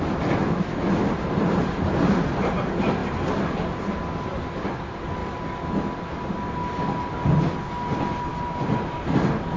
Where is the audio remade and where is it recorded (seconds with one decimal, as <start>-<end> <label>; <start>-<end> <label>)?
0.0-0.4 recorded; 0.4-1.1 remade; 1.1-9.6 recorded